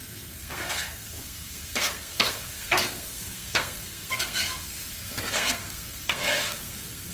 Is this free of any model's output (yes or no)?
no